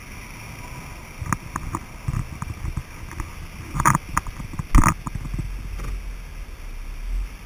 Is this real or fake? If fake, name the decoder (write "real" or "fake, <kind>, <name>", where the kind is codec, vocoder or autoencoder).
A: real